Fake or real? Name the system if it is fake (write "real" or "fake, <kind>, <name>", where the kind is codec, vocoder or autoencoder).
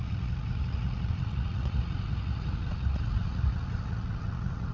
fake, vocoder, Vocos